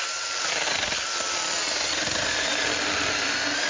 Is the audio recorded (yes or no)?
yes